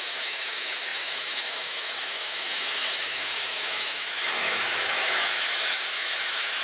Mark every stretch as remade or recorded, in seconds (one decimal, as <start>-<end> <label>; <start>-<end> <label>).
0.0-6.6 remade